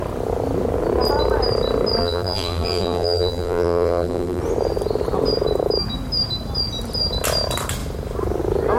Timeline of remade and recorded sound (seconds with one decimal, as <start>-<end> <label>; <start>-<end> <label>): 0.0-2.0 recorded; 2.0-4.4 remade; 4.4-8.8 recorded